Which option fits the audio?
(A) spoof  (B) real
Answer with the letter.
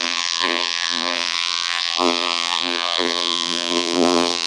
A